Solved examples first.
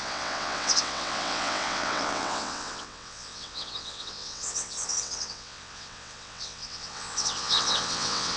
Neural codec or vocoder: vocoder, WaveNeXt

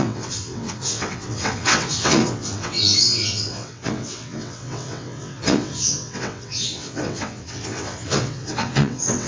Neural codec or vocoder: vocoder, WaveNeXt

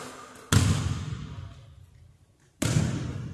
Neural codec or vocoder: none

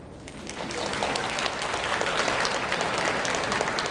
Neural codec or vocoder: none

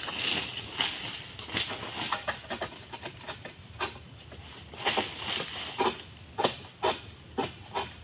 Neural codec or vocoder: none